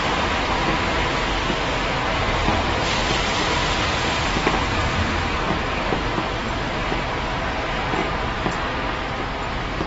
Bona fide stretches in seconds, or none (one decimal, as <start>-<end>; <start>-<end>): 0.0-2.5; 4.8-8.0; 8.6-9.9